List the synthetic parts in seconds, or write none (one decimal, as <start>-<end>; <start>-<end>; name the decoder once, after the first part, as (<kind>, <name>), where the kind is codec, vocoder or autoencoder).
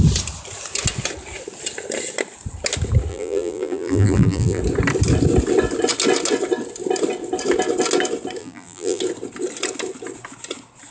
3.1-4.6 (vocoder, BigVGAN v2); 8.4-9.0